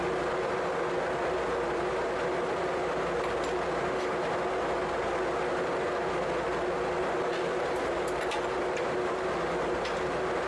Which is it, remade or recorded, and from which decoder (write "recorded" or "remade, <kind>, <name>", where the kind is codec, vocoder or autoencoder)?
recorded